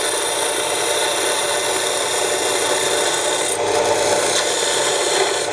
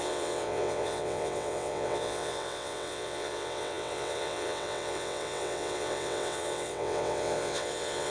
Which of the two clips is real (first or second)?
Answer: first